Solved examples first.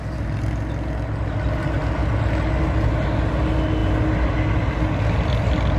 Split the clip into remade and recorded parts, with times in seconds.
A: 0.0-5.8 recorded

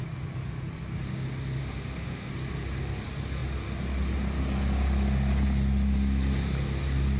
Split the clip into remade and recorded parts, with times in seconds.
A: 0.0-1.6 recorded; 1.6-2.3 remade; 2.3-7.2 recorded

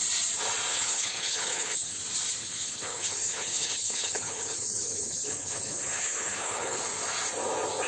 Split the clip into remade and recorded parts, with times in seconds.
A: 0.0-0.7 recorded; 0.7-2.0 remade; 2.0-2.4 recorded; 2.4-6.8 remade; 6.8-7.9 recorded

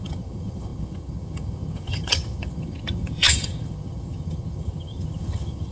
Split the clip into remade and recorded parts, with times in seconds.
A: 0.0-5.7 remade